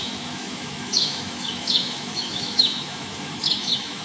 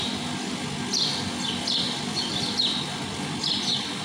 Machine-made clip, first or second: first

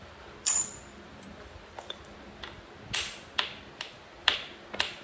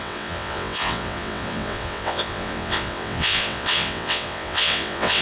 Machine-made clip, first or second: second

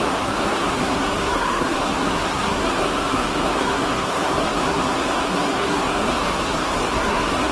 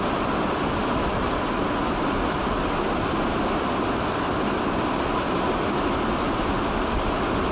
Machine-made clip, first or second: first